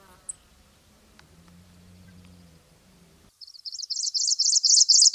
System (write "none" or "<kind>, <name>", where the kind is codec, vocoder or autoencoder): vocoder, BigVGAN v2